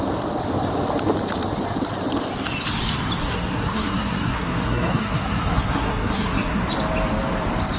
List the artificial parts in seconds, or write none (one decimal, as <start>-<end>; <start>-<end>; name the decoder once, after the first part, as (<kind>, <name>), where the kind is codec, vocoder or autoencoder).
3.2-6.6 (codec, SNAC)